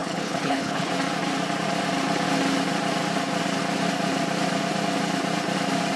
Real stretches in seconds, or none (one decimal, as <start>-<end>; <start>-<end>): 0.9-6.0